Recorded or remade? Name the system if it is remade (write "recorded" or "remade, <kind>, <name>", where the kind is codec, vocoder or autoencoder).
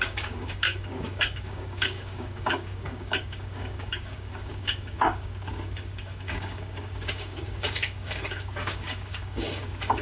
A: remade, codec, DAC